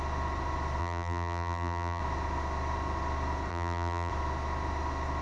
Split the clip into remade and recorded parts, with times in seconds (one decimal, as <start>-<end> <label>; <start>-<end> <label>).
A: 0.0-0.8 recorded; 0.8-2.0 remade; 2.0-3.5 recorded; 3.5-4.1 remade; 4.1-5.2 recorded